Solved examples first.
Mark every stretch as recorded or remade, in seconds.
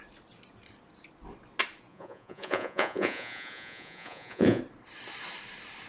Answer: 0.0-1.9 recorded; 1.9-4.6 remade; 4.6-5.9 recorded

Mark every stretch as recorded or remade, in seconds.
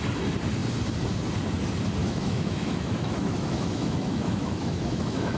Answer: 0.0-2.0 recorded; 2.0-5.4 remade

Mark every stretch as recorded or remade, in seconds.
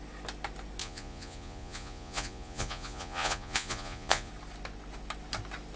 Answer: 0.0-0.8 recorded; 0.8-4.3 remade; 4.3-5.8 recorded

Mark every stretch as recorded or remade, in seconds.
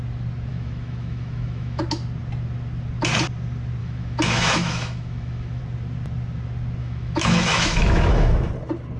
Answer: 0.0-0.5 recorded; 0.5-1.8 remade; 1.8-3.8 recorded; 3.8-5.6 remade; 5.6-6.8 recorded; 6.8-8.5 remade; 8.5-9.0 recorded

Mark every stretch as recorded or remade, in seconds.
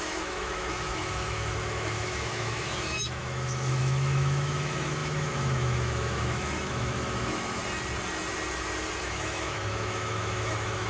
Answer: 0.0-7.6 remade; 7.6-9.0 recorded; 9.0-10.9 remade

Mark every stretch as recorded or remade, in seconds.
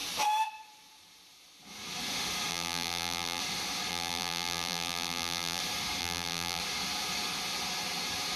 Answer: 0.0-2.5 recorded; 2.5-3.4 remade; 3.4-3.9 recorded; 3.9-5.6 remade; 5.6-6.0 recorded; 6.0-6.6 remade; 6.6-8.4 recorded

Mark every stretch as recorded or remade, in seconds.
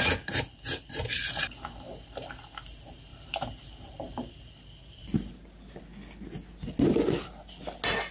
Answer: 0.0-3.1 recorded; 3.1-5.8 remade; 5.8-8.1 recorded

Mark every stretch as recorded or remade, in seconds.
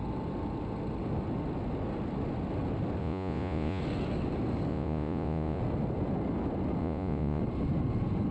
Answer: 0.0-3.0 recorded; 3.0-3.8 remade; 3.8-4.7 recorded; 4.7-5.6 remade; 5.6-6.8 recorded; 6.8-7.4 remade; 7.4-8.3 recorded